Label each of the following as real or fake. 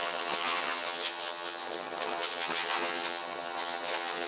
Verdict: fake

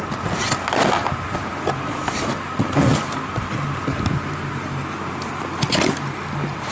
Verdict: real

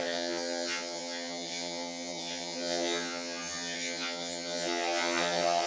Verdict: fake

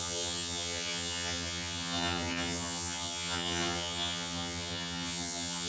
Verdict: fake